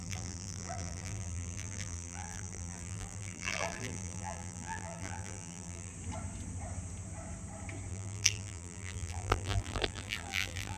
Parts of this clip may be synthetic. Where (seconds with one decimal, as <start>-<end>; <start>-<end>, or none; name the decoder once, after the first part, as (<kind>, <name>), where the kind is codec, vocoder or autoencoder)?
0.0-5.9 (vocoder, BigVGAN v2); 7.9-10.8